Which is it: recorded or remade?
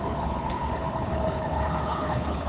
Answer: remade